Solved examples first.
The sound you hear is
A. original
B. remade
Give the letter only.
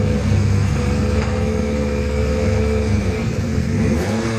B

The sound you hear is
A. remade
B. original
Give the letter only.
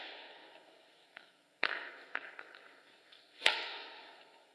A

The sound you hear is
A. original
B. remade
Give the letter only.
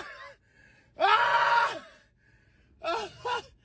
A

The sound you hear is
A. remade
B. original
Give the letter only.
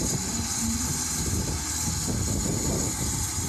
B